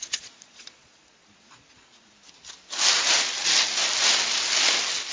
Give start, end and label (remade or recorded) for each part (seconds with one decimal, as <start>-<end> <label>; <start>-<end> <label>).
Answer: 0.0-2.1 remade; 2.1-5.1 recorded